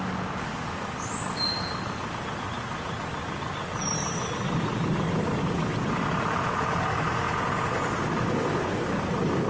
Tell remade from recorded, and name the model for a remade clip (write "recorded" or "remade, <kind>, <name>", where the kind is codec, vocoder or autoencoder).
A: recorded